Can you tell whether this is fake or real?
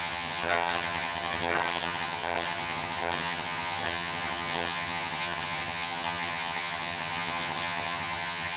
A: fake